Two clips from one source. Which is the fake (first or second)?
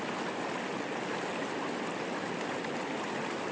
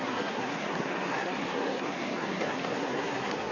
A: second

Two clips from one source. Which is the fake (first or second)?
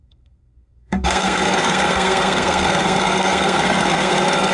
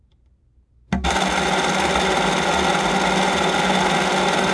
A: first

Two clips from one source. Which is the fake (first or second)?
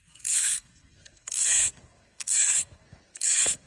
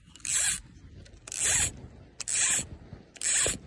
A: first